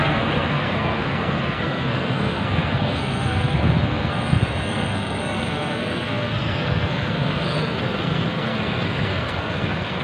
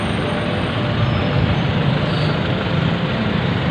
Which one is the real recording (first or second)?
second